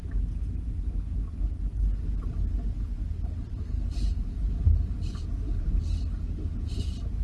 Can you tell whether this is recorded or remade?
recorded